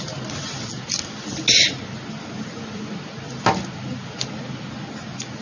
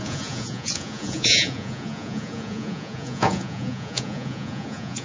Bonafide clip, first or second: first